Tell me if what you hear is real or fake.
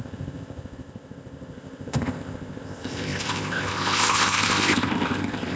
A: fake